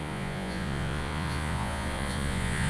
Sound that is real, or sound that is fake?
fake